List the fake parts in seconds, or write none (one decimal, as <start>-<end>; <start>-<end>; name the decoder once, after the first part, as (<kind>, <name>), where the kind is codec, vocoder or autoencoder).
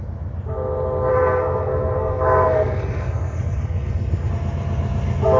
1.1-4.3 (codec, SNAC)